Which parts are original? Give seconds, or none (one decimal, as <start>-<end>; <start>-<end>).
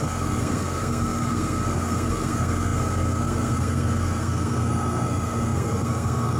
none